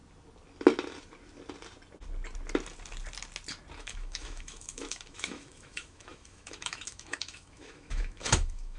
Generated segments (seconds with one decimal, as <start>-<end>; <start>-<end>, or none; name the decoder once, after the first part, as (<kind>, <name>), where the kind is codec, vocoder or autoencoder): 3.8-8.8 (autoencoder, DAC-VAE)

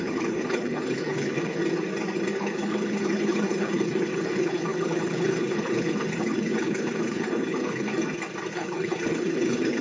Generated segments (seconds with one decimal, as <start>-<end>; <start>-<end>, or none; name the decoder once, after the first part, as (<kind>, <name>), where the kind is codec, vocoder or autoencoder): 0.0-1.6 (codec, HILCodec); 2.4-7.9; 8.5-9.8

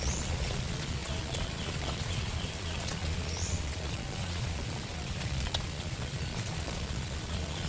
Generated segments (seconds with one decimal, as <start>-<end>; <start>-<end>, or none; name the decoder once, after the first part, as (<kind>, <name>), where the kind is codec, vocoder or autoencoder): 0.0-7.7 (vocoder, Vocos)

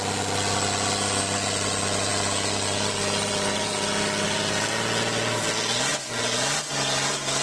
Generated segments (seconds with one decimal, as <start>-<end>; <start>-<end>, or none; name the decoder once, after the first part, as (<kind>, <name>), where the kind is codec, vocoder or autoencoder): none

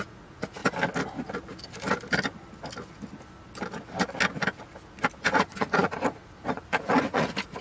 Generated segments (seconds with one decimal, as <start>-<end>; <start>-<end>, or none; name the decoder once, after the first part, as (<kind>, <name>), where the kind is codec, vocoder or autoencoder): 0.0-0.6 (vocoder, Vocos); 5.2-7.6

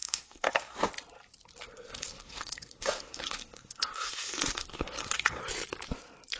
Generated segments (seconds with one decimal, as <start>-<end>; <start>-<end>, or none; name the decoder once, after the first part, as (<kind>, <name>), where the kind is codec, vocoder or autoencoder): 0.0-0.9 (codec, SNAC); 1.6-5.4